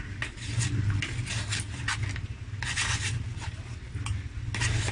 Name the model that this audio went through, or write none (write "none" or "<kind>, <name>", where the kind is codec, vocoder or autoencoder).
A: none